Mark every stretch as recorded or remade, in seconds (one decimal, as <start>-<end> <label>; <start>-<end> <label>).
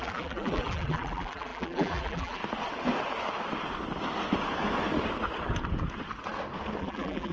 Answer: 0.0-2.4 remade; 2.4-6.8 recorded; 6.8-7.3 remade